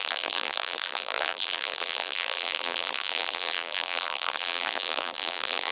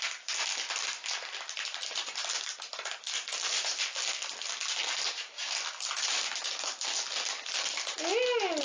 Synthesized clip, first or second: first